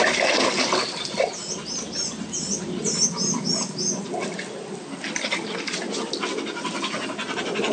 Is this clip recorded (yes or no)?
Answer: yes